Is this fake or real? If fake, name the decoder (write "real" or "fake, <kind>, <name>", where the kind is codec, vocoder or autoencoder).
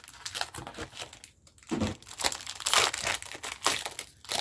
real